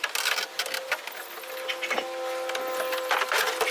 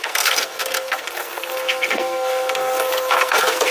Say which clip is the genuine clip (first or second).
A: first